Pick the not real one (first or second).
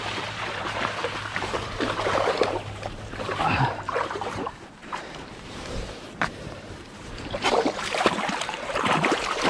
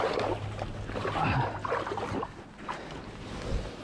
first